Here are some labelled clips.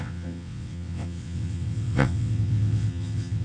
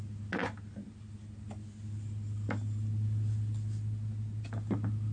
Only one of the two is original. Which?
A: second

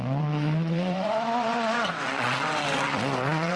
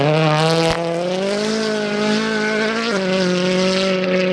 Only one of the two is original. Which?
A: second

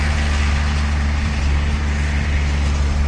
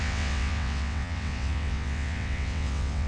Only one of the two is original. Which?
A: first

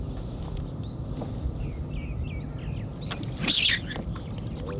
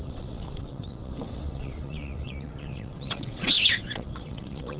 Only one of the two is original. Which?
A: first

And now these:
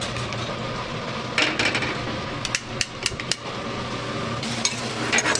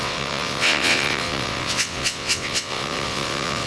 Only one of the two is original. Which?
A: first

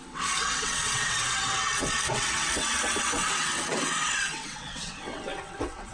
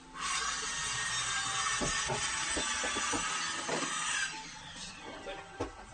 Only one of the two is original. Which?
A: second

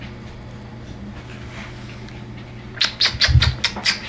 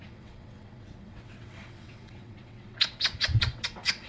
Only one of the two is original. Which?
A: first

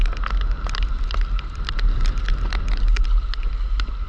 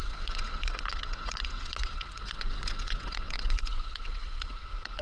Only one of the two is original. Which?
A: first